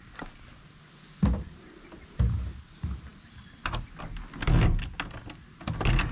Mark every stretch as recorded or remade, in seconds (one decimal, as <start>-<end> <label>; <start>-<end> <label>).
0.0-6.1 recorded